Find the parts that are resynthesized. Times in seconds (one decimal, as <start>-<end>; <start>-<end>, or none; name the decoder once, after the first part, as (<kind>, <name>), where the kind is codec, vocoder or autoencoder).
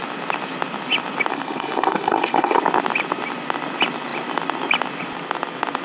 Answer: 1.3-2.6 (codec, SNAC)